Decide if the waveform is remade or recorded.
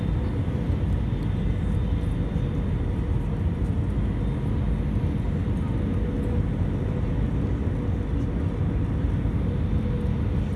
recorded